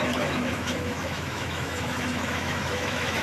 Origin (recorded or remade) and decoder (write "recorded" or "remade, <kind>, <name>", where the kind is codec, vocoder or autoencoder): remade, autoencoder, DAC-VAE